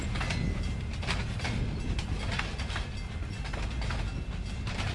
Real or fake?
real